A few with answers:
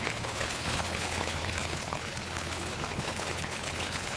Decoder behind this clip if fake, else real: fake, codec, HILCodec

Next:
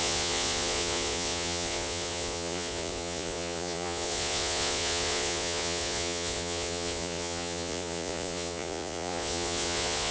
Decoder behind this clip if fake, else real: fake, vocoder, Vocos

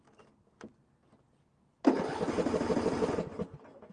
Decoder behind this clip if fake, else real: real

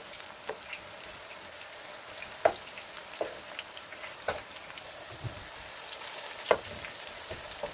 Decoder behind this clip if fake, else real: real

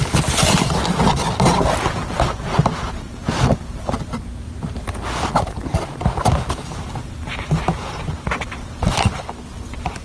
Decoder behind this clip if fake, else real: real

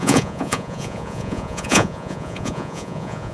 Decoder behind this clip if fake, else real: fake, vocoder, Vocos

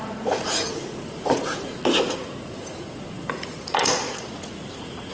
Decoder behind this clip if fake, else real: fake, vocoder, Vocos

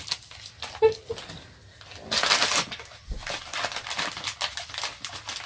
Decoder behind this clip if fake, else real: real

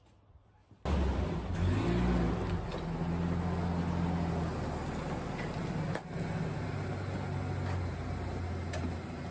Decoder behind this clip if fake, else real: real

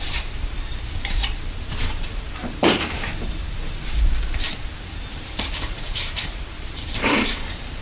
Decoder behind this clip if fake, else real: fake, vocoder, BigVGAN v2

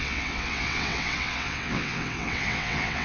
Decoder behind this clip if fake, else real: fake, vocoder, WaveNeXt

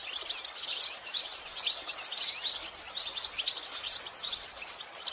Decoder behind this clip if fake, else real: real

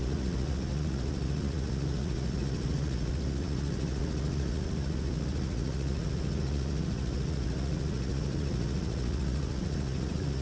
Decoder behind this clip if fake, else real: fake, vocoder, Vocos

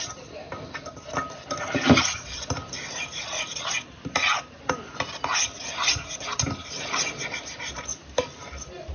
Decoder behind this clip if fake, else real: real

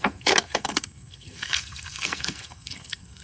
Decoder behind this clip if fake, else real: fake, codec, SNAC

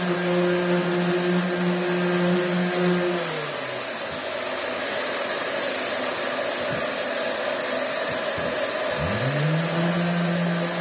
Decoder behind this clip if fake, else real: real